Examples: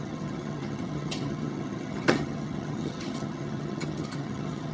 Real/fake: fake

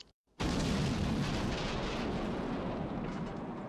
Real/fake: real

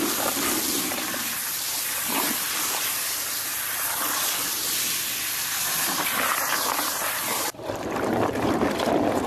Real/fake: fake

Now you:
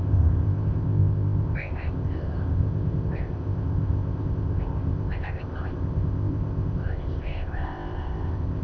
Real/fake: fake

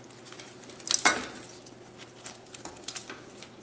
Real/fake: real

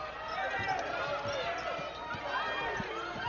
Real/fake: real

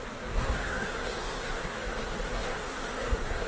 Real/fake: fake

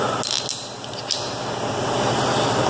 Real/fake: real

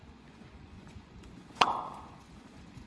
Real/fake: fake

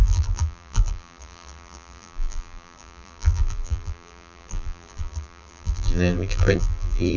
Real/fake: fake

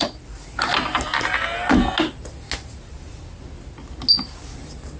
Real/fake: real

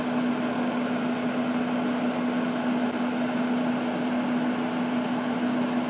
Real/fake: real